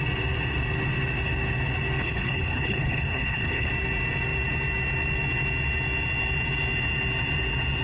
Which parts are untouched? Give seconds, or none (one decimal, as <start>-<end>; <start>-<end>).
0.0-2.0; 3.7-7.8